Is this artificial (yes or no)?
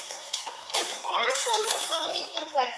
yes